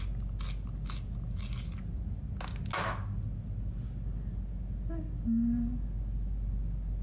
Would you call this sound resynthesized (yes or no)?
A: no